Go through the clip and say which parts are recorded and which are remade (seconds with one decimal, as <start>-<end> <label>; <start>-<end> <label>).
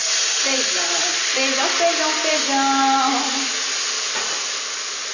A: 0.0-5.1 recorded